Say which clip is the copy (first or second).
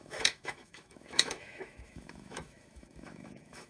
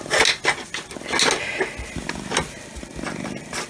first